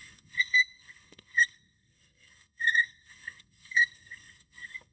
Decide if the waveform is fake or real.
fake